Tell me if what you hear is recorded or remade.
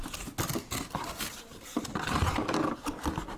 recorded